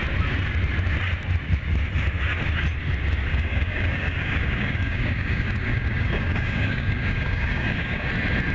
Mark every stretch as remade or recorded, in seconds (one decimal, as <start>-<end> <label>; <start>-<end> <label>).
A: 0.0-3.3 recorded; 3.3-8.1 remade; 8.1-8.5 recorded